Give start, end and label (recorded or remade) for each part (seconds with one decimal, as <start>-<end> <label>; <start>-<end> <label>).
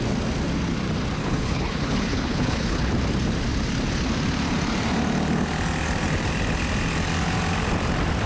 0.0-1.2 recorded; 1.2-2.9 remade; 2.9-8.3 recorded